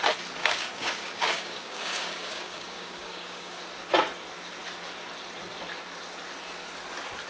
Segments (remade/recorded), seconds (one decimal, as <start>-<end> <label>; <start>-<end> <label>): 0.0-0.4 recorded; 0.4-3.6 remade; 3.6-7.3 recorded